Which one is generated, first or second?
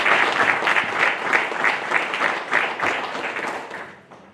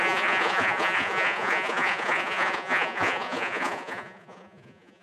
second